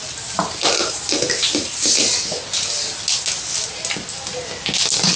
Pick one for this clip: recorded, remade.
recorded